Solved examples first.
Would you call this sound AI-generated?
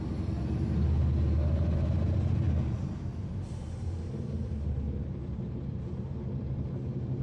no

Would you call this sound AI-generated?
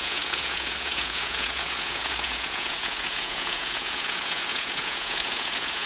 yes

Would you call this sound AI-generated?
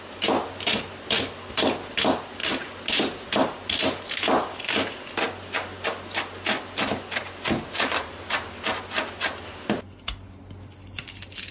no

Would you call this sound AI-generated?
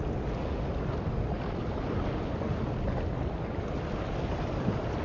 no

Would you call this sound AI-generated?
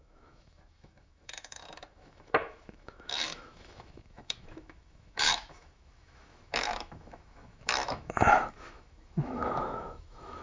yes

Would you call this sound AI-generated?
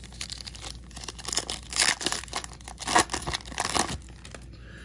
no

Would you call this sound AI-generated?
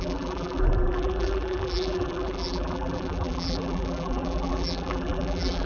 yes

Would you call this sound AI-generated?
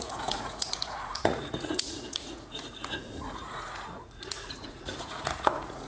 yes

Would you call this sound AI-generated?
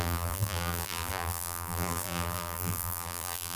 yes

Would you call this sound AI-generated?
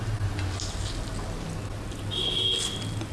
no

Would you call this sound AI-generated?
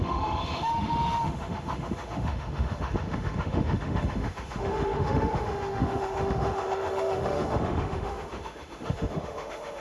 yes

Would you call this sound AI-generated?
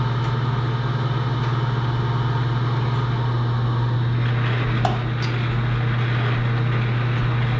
no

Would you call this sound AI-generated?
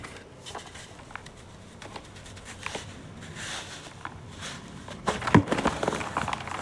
yes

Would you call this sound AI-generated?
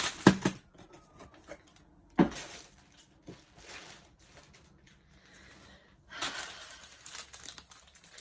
no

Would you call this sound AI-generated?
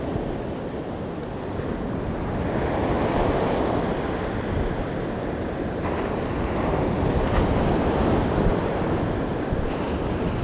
no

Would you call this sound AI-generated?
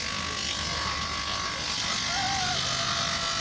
no